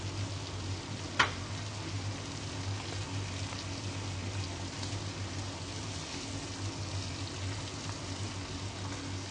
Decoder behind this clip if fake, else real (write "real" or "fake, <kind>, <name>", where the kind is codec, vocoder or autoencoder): real